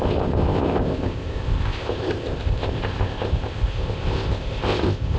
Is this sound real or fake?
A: fake